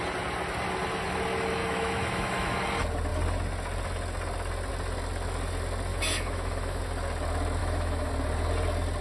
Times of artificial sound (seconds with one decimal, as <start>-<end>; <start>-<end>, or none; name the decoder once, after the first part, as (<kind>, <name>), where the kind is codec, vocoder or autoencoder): 1.6-2.6 (autoencoder, DAC-VAE); 5.9-6.8; 7.6-8.1